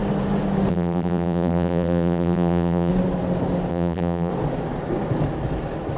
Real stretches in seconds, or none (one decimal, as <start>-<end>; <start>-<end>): 0.0-0.7; 2.9-3.7; 4.3-6.0